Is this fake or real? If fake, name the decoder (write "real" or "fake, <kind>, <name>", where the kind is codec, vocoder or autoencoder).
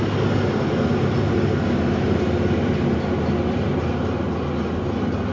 real